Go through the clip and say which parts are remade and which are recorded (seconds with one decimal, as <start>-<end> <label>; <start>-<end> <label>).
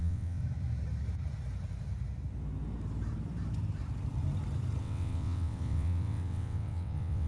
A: 0.0-0.4 remade; 0.4-4.8 recorded; 4.8-7.3 remade